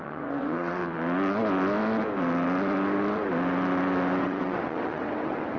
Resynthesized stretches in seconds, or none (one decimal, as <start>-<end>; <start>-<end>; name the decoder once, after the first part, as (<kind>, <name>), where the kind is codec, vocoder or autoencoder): 0.0-0.8 (vocoder, WaveNeXt); 4.2-5.6